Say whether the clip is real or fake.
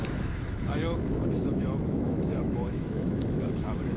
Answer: fake